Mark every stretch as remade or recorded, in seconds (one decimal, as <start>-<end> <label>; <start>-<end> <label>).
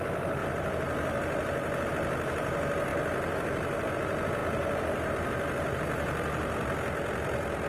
0.0-7.7 recorded